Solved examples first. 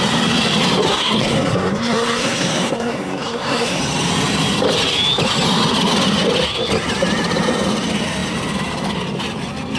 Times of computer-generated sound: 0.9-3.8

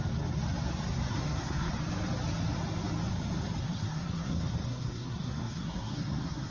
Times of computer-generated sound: 1.1-1.7; 3.6-6.5